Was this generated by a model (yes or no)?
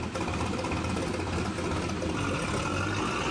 no